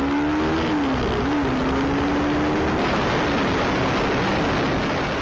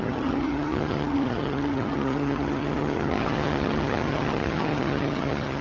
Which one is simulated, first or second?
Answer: second